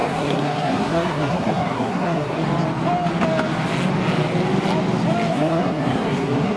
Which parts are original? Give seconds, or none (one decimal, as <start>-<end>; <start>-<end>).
2.5-5.3